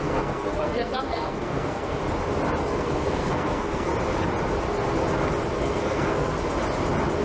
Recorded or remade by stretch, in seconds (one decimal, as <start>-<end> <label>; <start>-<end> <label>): 0.0-2.0 remade; 2.0-2.6 recorded; 2.6-3.9 remade; 3.9-5.6 recorded; 5.6-6.3 remade; 6.3-7.2 recorded